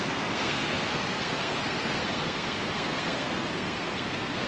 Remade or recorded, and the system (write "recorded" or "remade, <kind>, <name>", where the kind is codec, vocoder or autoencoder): remade, codec, SNAC